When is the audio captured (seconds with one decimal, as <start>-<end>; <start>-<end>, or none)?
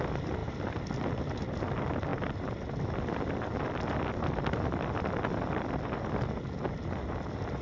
0.0-7.6